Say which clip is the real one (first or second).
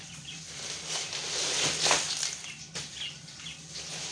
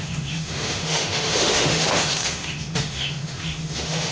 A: first